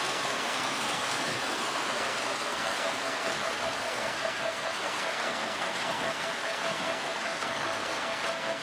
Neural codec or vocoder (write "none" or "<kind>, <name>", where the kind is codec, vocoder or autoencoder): codec, SNAC